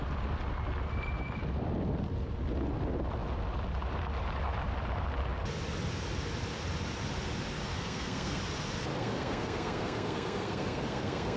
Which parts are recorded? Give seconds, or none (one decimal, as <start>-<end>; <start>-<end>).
0.0-7.7; 8.4-8.9